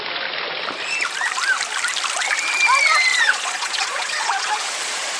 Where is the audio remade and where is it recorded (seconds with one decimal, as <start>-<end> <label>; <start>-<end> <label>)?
0.0-3.1 recorded; 3.1-5.2 remade